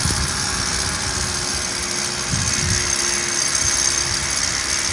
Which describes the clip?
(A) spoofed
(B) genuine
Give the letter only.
B